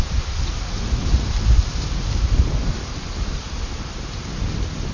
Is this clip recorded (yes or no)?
yes